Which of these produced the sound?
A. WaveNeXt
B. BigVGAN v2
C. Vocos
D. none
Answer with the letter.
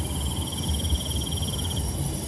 D